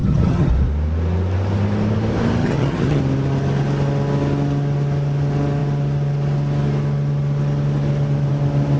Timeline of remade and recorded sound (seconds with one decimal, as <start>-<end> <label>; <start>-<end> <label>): 0.0-0.5 remade; 0.5-2.4 recorded; 2.4-3.0 remade; 3.0-8.8 recorded